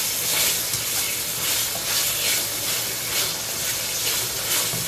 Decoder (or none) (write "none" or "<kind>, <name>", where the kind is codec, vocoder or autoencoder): none